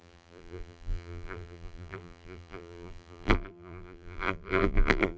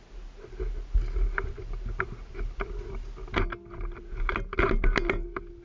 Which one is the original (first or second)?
second